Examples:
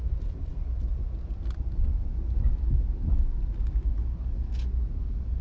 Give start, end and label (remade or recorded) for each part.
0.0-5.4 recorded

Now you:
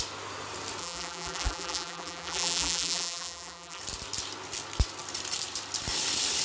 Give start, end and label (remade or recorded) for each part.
0.0-0.8 recorded; 0.8-3.8 remade; 3.8-6.4 recorded

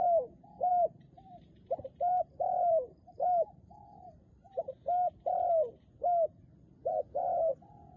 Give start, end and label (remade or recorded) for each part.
0.0-0.7 recorded; 0.7-5.5 remade; 5.5-8.0 recorded

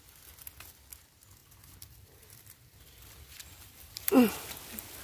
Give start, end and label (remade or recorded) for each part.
0.0-1.4 recorded; 1.4-4.3 remade; 4.3-5.0 recorded

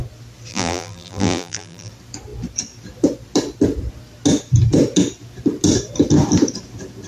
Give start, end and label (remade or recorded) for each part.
0.0-0.5 recorded; 0.5-1.9 remade; 1.9-7.1 recorded